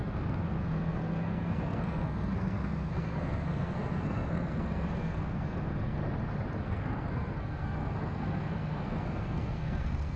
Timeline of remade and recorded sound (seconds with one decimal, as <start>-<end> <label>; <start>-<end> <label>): 0.0-6.0 remade; 6.0-6.6 recorded; 6.6-10.2 remade